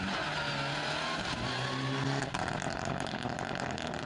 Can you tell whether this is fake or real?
real